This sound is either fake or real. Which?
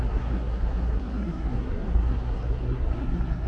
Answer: fake